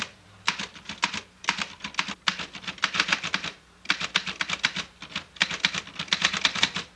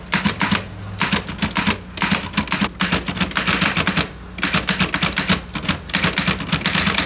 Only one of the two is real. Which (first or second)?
second